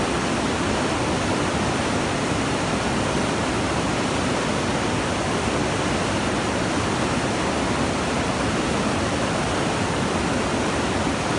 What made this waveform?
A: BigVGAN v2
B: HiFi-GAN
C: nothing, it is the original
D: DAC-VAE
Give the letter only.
C